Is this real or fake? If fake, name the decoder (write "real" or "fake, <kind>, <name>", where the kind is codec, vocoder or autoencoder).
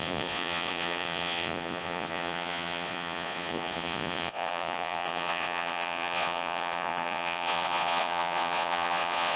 fake, vocoder, Vocos